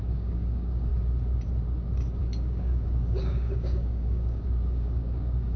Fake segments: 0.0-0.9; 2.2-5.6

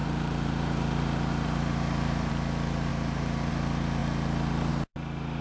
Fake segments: 0.0-2.3; 2.9-3.5